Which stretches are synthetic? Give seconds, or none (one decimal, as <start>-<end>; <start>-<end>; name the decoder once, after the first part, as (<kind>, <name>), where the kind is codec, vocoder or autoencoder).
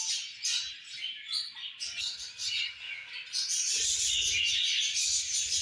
none